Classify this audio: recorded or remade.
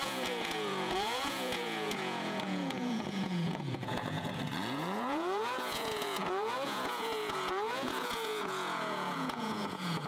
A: remade